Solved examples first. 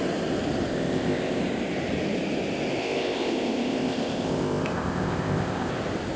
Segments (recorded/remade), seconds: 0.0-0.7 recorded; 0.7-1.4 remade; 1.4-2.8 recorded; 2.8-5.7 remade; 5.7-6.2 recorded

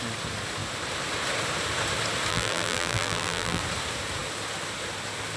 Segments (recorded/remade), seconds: 0.0-2.3 recorded; 2.3-3.6 remade; 3.6-5.4 recorded

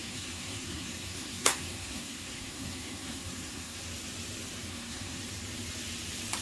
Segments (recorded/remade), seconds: 0.0-3.8 remade; 3.8-4.7 recorded; 4.7-5.2 remade; 5.2-6.4 recorded

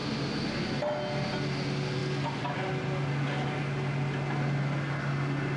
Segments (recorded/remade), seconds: 0.0-5.6 recorded

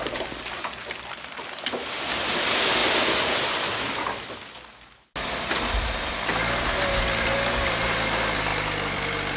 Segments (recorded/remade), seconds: 0.0-9.4 recorded

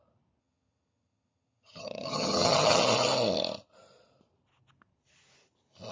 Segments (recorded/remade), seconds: 0.0-0.4 recorded; 0.4-2.8 remade; 2.8-5.9 recorded